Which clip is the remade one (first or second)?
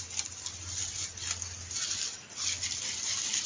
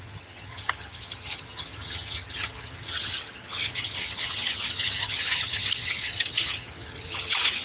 second